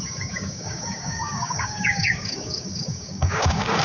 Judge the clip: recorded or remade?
remade